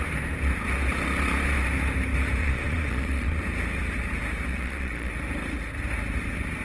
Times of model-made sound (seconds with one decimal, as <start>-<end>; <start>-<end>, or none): 2.4-3.4; 4.5-5.1